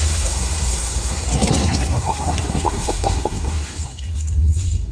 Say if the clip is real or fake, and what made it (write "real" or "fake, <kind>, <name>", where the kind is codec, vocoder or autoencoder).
fake, codec, SNAC